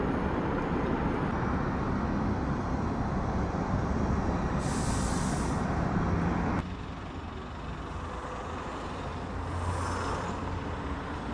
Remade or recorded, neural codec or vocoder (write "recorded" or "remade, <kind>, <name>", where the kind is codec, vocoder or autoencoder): recorded